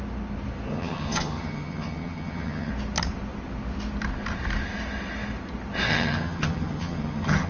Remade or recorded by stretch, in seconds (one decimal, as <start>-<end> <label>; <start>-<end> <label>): 0.0-0.7 recorded; 0.7-2.7 remade; 2.7-5.9 recorded; 5.9-7.5 remade